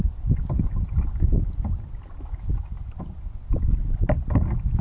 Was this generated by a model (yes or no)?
no